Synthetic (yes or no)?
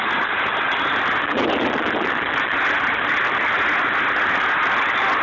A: no